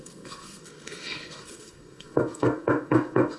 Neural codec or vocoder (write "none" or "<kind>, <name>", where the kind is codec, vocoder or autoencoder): codec, SNAC